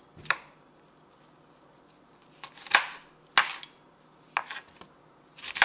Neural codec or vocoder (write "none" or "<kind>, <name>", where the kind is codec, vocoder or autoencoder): none